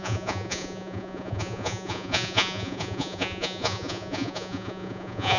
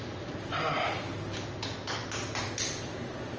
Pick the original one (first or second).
second